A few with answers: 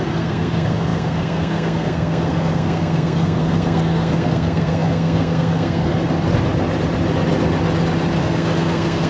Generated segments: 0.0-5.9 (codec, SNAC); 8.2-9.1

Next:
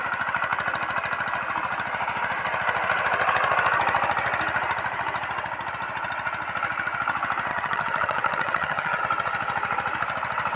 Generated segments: 7.5-9.0 (vocoder, HiFi-GAN)

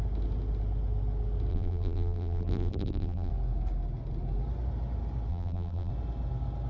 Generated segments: 1.5-3.3 (vocoder, BigVGAN v2); 5.3-5.9